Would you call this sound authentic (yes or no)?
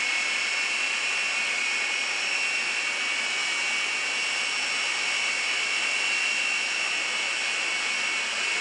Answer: yes